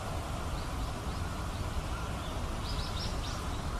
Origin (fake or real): real